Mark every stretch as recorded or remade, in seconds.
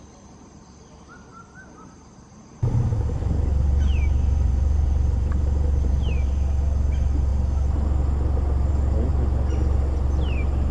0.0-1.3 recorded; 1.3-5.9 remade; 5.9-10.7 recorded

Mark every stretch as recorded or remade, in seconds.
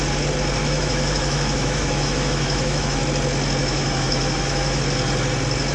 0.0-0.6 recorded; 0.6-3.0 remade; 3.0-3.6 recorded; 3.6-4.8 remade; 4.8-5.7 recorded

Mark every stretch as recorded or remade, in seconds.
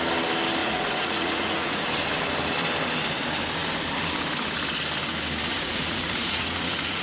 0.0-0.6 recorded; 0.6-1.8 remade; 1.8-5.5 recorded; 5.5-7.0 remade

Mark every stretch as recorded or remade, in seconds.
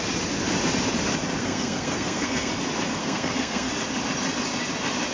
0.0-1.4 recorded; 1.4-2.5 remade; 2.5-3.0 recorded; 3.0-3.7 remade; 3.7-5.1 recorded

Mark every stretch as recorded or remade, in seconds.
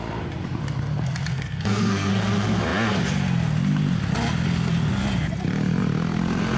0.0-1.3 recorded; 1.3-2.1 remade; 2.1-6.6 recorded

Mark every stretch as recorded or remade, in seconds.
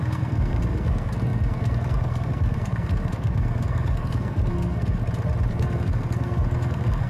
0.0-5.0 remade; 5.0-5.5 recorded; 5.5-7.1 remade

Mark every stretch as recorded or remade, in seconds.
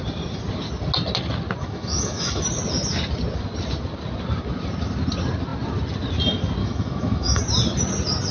0.0-1.6 recorded; 1.6-2.4 remade; 2.4-6.6 recorded; 6.6-7.4 remade; 7.4-8.3 recorded